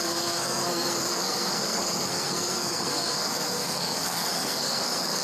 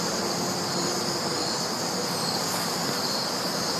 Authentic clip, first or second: second